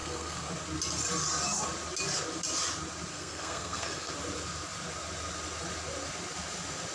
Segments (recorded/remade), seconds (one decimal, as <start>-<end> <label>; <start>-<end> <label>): 0.0-0.5 remade; 0.5-3.1 recorded; 3.1-4.1 remade; 4.1-6.9 recorded